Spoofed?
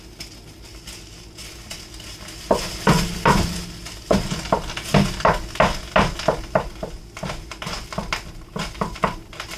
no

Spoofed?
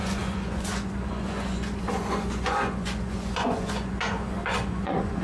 yes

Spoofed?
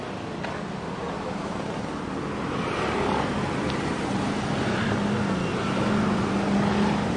no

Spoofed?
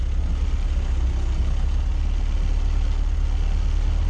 no